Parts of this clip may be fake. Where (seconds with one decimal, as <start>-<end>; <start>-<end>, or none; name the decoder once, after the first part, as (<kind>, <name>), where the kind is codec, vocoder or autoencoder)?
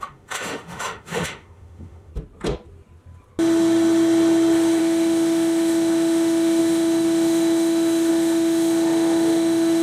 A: 0.0-2.1 (autoencoder, DAC-VAE); 4.8-9.8